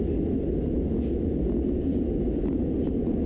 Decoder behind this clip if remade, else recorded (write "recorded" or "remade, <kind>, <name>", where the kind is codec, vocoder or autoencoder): recorded